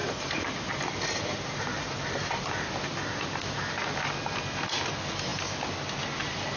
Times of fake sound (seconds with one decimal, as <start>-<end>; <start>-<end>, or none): 0.0-2.6